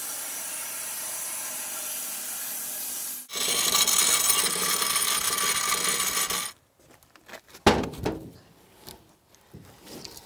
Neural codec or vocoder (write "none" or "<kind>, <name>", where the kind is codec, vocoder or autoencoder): none